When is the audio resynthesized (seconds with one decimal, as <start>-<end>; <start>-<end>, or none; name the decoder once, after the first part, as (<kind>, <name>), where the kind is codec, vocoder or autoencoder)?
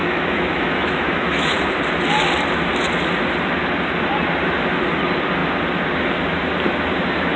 0.0-1.5 (autoencoder, DAC-VAE)